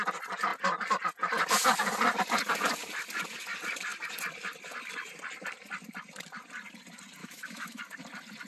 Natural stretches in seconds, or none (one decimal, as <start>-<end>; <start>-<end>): 0.0-7.2; 7.8-8.5